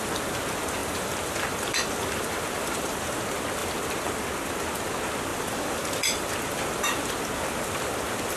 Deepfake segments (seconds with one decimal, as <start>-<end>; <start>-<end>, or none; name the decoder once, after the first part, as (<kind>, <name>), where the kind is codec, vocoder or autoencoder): 0.8-3.0 (vocoder, BigVGAN v2); 3.6-4.2; 5.3-7.4